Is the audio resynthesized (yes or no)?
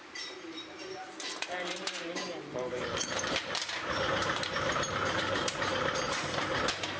yes